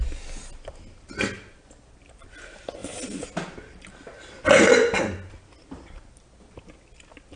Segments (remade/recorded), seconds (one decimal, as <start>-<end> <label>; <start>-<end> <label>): 0.0-7.4 recorded

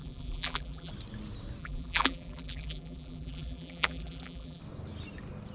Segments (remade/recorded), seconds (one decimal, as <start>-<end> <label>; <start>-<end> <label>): 0.0-0.9 remade; 0.9-1.6 recorded; 1.6-4.6 remade; 4.6-5.5 recorded

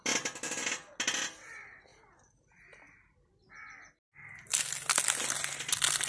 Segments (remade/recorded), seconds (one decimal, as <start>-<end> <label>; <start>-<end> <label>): 0.0-6.1 recorded

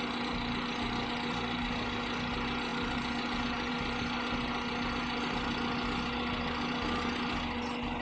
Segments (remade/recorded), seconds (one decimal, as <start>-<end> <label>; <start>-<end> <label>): 0.0-8.0 recorded

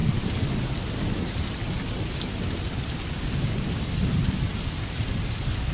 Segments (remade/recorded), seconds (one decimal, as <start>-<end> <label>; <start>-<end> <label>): 0.0-5.7 recorded

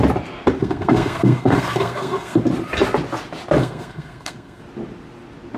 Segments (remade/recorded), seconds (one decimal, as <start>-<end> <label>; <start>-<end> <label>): 0.0-0.6 recorded; 0.6-2.4 remade; 2.4-3.6 recorded; 3.6-4.6 remade; 4.6-5.6 recorded

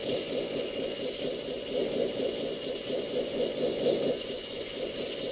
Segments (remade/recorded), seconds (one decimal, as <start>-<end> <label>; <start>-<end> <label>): 0.0-1.1 remade; 1.1-1.8 recorded; 1.8-5.3 remade

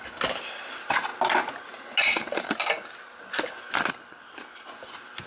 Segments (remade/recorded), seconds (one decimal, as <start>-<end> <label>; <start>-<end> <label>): 0.0-1.1 remade; 1.1-3.7 recorded; 3.7-5.3 remade